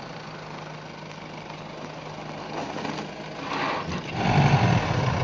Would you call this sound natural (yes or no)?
yes